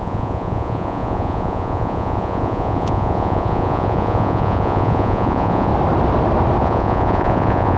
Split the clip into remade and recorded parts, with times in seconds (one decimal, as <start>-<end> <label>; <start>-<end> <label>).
0.0-5.7 remade; 5.7-6.6 recorded; 6.6-7.8 remade